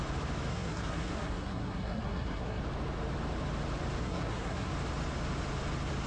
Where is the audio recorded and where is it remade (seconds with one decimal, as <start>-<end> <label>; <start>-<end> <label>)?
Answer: 0.0-0.5 recorded; 0.5-2.6 remade; 2.6-4.0 recorded; 4.0-4.7 remade; 4.7-6.1 recorded